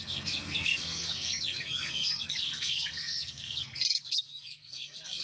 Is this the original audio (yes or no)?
no